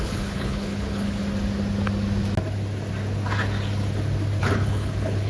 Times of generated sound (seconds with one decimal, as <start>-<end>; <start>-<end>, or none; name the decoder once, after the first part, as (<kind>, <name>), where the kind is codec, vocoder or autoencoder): 0.0-1.2 (codec, HILCodec); 4.4-5.3